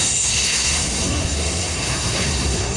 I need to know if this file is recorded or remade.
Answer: remade